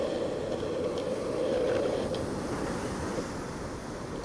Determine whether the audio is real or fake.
real